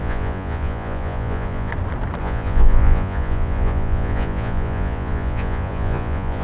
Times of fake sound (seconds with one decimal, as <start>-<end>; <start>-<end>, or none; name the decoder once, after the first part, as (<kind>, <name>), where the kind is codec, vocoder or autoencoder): 0.0-1.7 (vocoder, Vocos); 2.2-6.4